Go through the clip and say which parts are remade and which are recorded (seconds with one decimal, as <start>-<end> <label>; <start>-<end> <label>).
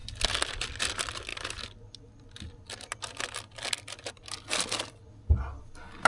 0.0-6.1 recorded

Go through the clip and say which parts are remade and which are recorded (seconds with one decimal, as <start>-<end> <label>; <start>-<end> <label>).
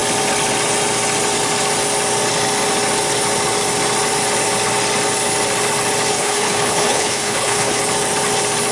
0.0-6.1 recorded; 6.1-7.8 remade; 7.8-8.7 recorded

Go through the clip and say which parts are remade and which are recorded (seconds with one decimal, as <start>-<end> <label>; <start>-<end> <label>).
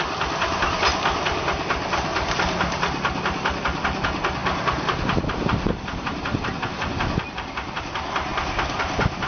0.0-9.3 recorded